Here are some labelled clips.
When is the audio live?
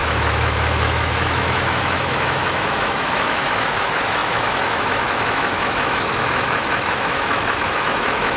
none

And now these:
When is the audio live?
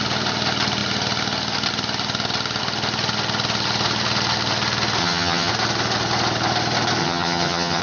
0.0-5.0; 5.5-7.0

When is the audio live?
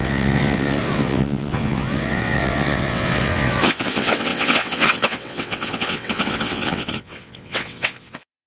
none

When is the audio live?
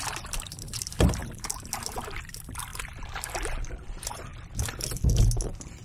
4.3-5.2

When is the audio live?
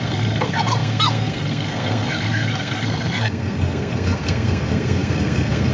none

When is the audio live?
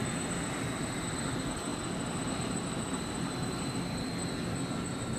0.0-1.1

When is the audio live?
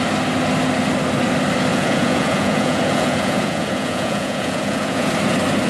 0.0-1.7; 5.1-5.7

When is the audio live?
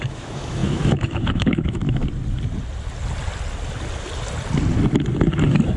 2.0-5.8